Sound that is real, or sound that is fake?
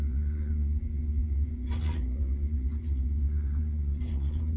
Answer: fake